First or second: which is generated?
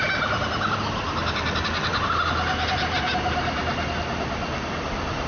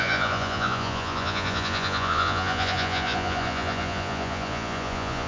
second